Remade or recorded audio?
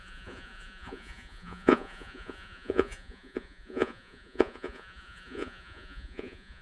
remade